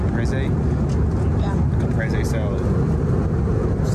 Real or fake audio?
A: real